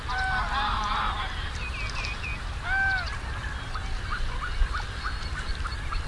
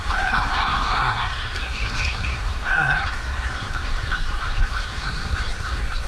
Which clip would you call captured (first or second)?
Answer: first